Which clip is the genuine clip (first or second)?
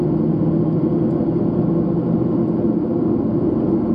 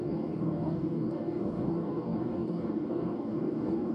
first